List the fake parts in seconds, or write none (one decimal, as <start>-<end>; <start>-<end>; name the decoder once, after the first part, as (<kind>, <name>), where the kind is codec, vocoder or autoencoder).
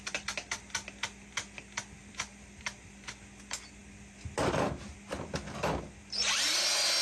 2.0-2.9 (vocoder, BigVGAN v2)